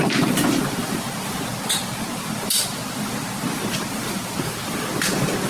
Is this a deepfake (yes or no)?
yes